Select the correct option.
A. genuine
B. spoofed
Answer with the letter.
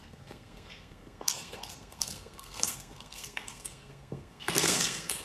B